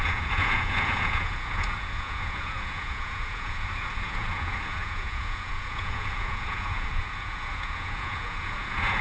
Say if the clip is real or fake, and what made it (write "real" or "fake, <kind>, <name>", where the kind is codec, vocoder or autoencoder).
fake, vocoder, Vocos